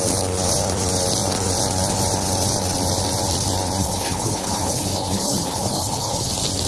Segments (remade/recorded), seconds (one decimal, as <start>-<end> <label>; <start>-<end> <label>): 0.0-3.8 recorded; 3.8-6.3 remade; 6.3-6.7 recorded